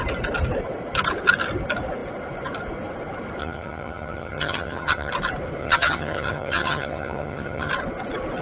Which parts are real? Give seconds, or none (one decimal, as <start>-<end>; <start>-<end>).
0.0-3.4; 5.1-5.6; 7.7-8.4